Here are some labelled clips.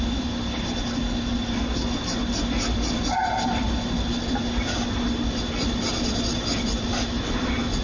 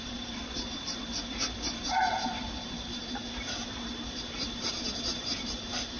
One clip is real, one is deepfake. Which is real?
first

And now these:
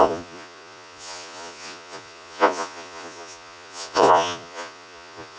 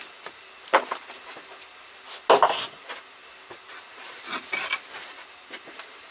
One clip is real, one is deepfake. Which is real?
second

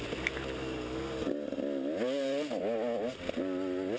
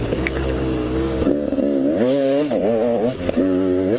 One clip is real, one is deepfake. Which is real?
first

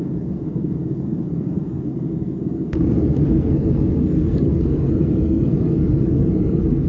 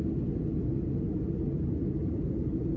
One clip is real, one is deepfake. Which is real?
second